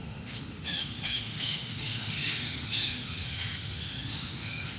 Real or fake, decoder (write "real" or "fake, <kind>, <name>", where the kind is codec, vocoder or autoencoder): fake, autoencoder, DAC-VAE